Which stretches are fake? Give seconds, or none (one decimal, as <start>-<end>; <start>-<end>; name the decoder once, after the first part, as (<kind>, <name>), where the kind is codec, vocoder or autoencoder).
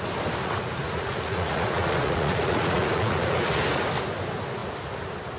0.4-3.6 (vocoder, Vocos)